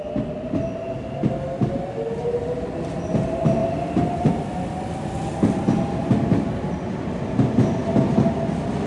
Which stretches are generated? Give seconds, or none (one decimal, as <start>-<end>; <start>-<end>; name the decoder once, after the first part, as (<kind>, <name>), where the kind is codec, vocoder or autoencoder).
none